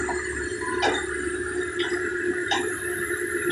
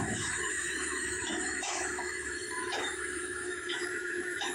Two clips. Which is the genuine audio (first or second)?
first